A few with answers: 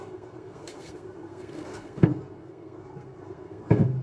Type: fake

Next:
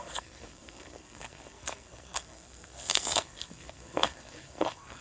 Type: fake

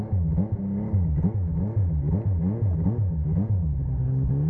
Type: real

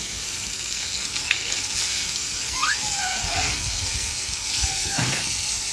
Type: fake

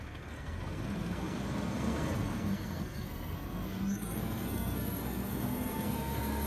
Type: fake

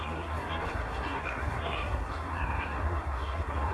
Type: fake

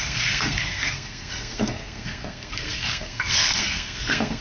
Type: fake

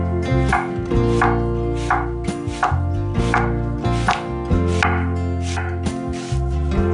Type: real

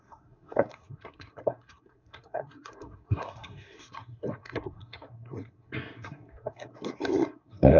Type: fake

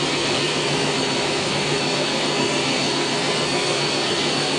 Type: fake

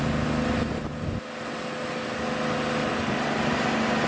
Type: real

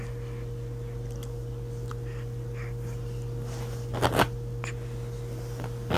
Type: real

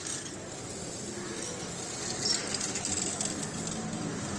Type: real